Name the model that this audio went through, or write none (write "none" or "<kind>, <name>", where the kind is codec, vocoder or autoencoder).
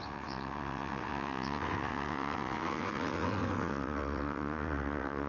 vocoder, WaveNeXt